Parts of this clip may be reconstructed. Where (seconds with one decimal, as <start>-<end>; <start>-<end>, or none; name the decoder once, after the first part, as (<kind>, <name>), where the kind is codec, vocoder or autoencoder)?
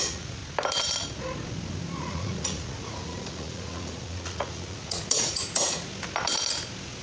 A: 0.0-0.4 (vocoder, Vocos); 2.0-5.9